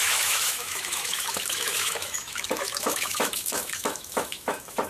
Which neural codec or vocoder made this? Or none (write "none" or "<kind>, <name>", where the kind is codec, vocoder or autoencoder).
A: autoencoder, DAC-VAE